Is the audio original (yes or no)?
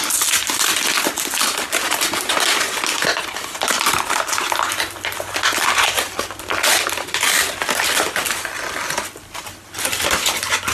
yes